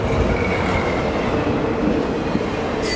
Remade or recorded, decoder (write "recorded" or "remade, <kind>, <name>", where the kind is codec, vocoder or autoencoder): recorded